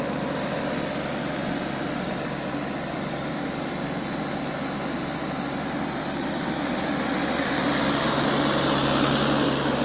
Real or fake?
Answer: real